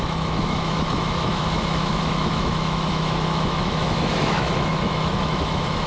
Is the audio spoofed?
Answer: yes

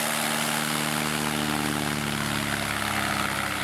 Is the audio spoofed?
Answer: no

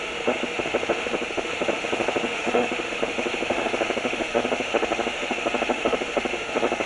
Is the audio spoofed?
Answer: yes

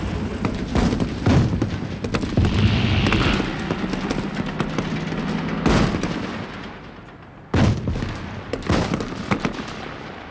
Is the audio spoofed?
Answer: no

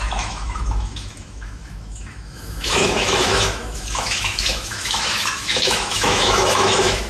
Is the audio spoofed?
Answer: yes